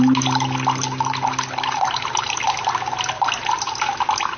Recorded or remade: recorded